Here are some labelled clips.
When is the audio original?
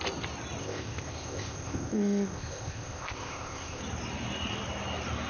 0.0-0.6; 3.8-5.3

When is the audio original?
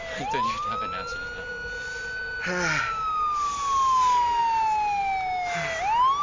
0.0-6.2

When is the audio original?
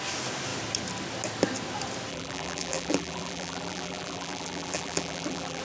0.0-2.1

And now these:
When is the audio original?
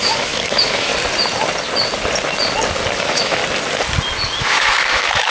0.9-3.0; 3.4-4.4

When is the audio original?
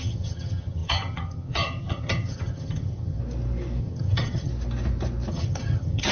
3.2-3.8; 4.5-5.3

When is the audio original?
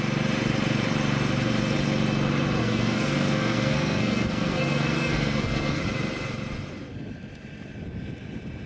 0.0-2.6; 5.8-8.7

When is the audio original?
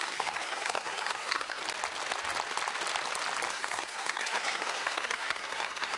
1.6-3.5